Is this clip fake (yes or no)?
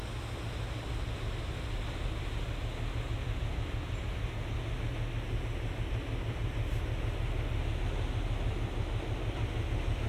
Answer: no